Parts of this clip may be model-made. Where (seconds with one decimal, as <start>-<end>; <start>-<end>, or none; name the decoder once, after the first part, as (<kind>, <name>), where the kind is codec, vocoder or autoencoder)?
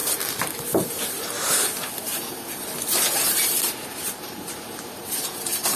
0.8-5.8 (vocoder, BigVGAN v2)